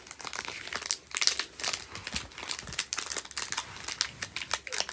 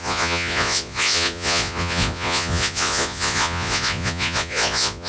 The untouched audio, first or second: first